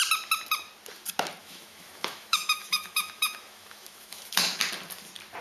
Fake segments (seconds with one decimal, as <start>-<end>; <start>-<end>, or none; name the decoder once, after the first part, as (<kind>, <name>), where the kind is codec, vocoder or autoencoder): 1.4-4.6 (autoencoder, DAC-VAE)